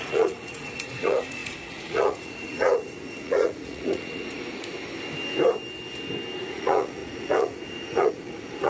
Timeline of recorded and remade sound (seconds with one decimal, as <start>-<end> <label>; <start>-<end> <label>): 0.0-4.7 remade; 4.7-6.4 recorded; 6.4-8.7 remade